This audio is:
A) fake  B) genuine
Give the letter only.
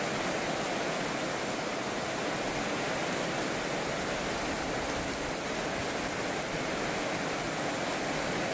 B